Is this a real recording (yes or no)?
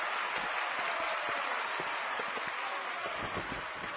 yes